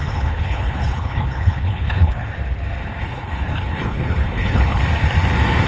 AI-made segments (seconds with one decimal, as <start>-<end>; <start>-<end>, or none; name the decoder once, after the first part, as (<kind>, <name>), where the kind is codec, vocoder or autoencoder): 0.0-2.3 (codec, HILCodec); 3.0-4.8

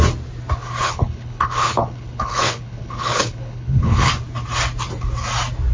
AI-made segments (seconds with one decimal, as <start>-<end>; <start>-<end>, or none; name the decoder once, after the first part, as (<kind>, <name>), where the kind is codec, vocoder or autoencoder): 0.8-4.1 (codec, HILCodec)

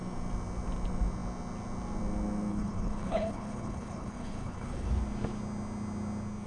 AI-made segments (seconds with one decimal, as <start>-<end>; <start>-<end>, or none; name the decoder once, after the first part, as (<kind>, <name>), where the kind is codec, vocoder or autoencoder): 2.5-4.9 (codec, HILCodec)

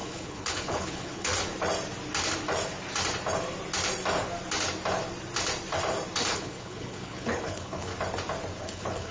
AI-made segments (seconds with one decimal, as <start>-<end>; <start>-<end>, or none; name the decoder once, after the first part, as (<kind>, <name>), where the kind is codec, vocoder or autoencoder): 0.0-1.3 (codec, HILCodec); 6.3-7.9; 8.6-9.1

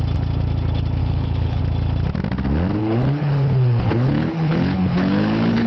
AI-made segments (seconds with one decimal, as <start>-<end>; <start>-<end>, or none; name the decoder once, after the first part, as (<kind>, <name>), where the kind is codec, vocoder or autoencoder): 1.0-1.6 (codec, HILCodec); 2.8-5.7

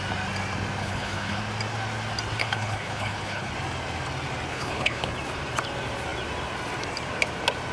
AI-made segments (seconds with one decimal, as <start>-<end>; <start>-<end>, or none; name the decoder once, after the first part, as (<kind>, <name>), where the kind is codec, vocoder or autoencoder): 0.8-1.4 (codec, HILCodec); 2.4-3.5; 4.5-5.1